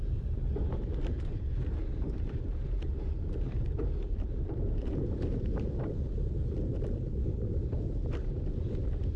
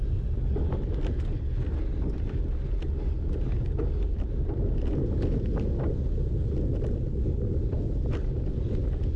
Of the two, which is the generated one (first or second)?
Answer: first